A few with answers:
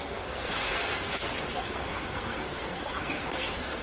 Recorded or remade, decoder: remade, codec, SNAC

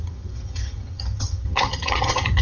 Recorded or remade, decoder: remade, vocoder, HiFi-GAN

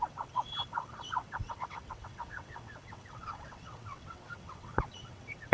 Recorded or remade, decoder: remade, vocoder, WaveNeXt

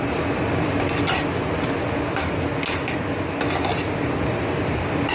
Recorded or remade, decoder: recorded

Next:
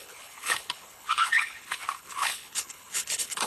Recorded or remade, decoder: remade, codec, HILCodec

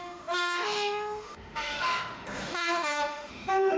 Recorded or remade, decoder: remade, autoencoder, DAC-VAE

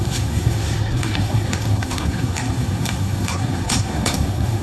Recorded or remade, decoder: remade, codec, SNAC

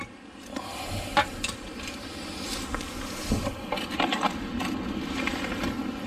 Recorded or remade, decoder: recorded